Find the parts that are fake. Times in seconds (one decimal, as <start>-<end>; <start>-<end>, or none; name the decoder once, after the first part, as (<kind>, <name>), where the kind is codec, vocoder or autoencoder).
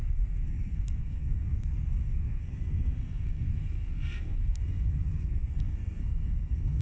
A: 0.0-6.8 (codec, SNAC)